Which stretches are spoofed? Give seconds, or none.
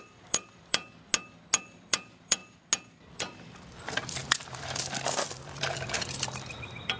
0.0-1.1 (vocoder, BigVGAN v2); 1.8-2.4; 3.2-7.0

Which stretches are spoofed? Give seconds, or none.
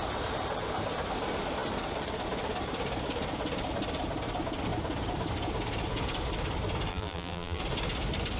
6.9-7.6 (vocoder, BigVGAN v2)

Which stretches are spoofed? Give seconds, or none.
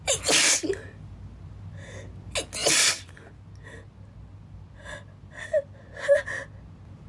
none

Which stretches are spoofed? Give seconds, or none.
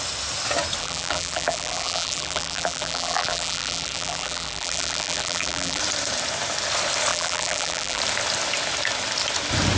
0.8-5.8 (vocoder, BigVGAN v2); 7.1-8.0